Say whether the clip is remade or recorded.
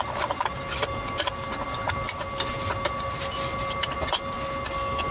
recorded